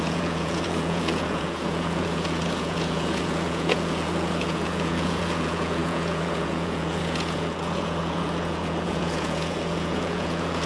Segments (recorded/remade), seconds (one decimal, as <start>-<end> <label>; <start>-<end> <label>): 0.0-10.7 remade